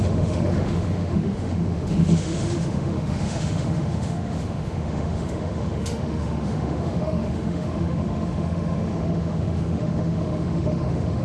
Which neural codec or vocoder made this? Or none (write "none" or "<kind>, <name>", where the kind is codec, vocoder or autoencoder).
autoencoder, DAC-VAE